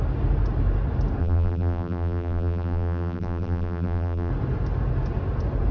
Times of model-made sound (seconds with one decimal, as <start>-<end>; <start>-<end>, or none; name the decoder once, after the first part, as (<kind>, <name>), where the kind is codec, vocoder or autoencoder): 1.2-4.3 (vocoder, BigVGAN v2)